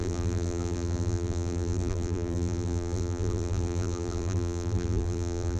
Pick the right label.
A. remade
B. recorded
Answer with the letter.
A